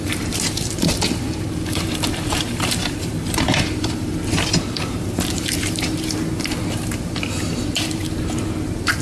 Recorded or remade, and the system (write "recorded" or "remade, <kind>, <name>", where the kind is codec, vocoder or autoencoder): remade, vocoder, BigVGAN v2